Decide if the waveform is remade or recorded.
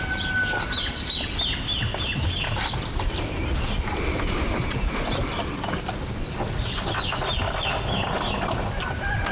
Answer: recorded